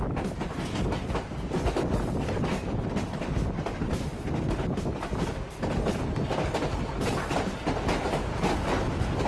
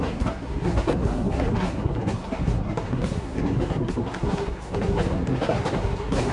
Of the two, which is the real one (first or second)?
first